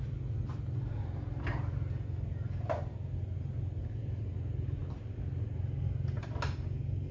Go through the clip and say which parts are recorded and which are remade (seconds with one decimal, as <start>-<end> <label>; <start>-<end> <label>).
0.0-7.1 recorded